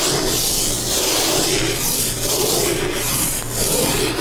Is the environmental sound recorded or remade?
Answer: recorded